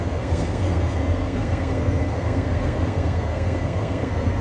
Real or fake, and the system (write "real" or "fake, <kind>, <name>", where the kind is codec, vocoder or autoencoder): fake, codec, SNAC